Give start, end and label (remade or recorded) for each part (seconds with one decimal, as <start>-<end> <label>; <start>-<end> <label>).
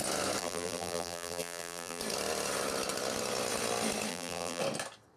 0.0-0.4 recorded; 0.4-2.0 remade; 2.0-4.1 recorded; 4.1-4.6 remade; 4.6-5.2 recorded